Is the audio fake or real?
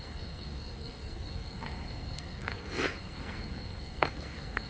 fake